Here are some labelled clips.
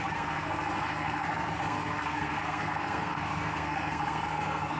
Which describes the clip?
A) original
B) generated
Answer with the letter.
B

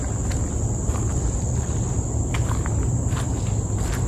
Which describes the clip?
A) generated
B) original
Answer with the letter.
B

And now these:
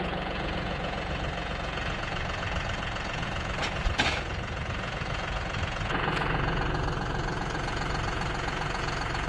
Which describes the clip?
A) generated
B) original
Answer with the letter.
A